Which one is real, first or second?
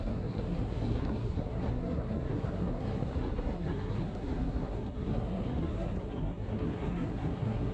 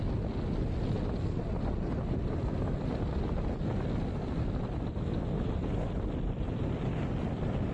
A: second